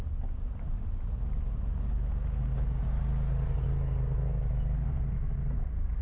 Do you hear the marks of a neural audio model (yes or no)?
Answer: no